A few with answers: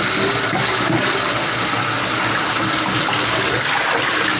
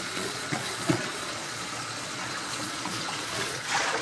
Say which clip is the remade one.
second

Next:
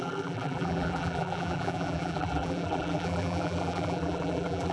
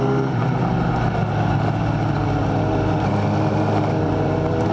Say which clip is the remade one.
first